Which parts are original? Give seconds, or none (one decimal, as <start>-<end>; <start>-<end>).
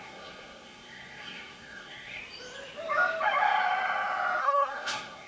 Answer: 2.2-4.4